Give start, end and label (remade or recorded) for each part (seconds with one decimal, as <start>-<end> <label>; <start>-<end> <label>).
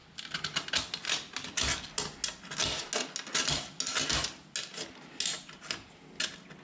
0.0-6.6 recorded